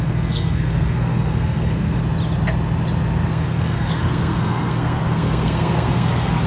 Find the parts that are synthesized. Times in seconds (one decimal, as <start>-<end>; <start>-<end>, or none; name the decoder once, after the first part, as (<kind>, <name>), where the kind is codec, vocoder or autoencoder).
0.0-2.0 (codec, SNAC); 3.3-6.5